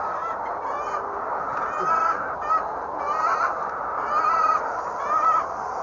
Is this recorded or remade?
recorded